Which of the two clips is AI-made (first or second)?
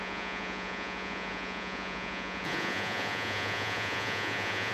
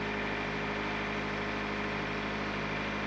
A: first